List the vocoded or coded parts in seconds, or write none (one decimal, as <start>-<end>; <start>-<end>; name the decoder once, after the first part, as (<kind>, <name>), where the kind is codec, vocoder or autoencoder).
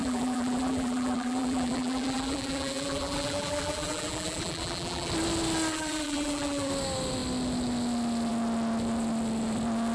0.0-5.1 (vocoder, BigVGAN v2); 5.7-6.7